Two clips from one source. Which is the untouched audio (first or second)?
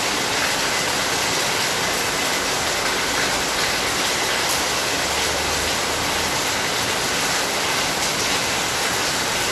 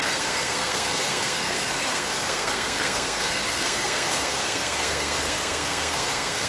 first